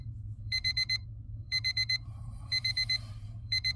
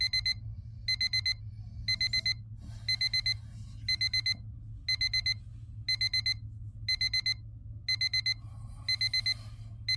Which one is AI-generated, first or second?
first